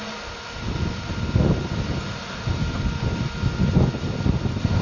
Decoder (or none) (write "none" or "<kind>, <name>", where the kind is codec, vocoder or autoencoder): none